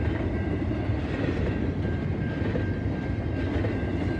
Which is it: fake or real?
real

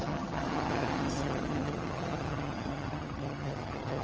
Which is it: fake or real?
fake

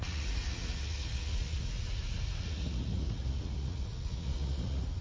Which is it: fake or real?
fake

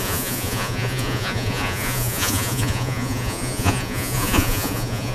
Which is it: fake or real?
fake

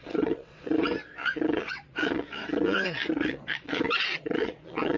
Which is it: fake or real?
fake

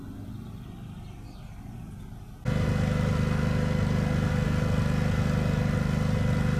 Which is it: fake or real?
real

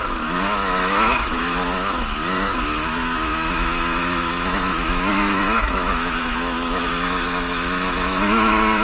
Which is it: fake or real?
fake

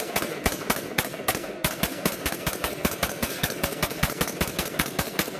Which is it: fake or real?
fake